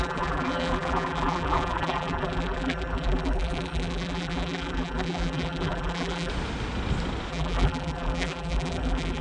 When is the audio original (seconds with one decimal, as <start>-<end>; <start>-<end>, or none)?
6.3-7.3